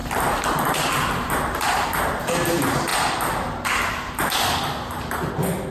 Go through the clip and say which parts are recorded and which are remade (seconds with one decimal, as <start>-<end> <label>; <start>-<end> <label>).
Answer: 0.0-5.7 recorded

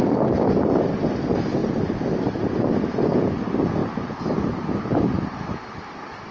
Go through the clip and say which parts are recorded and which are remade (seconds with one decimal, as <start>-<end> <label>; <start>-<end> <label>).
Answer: 0.0-3.8 recorded; 3.8-5.8 remade; 5.8-6.3 recorded

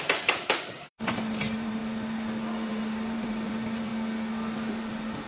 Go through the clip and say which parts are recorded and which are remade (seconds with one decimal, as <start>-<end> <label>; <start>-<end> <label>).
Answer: 0.0-1.8 remade; 1.8-2.7 recorded; 2.7-3.9 remade; 3.9-4.7 recorded; 4.7-5.3 remade

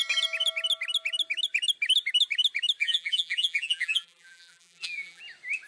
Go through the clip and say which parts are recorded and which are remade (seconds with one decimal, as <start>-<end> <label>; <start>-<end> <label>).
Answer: 0.0-2.8 recorded; 2.8-5.2 remade; 5.2-5.7 recorded

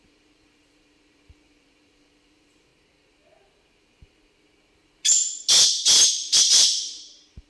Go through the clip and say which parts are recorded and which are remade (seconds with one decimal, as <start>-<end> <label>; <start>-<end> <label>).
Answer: 0.0-2.7 remade; 2.7-6.1 recorded; 6.1-7.5 remade